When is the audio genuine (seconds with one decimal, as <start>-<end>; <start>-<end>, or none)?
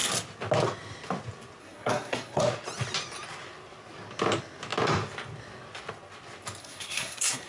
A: 0.0-1.6; 2.4-6.6